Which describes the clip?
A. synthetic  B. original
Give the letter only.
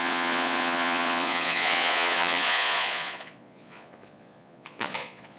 A